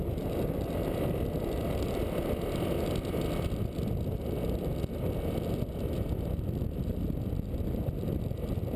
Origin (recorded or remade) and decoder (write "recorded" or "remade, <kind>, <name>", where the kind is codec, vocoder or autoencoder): recorded